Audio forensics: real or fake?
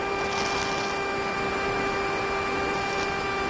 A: real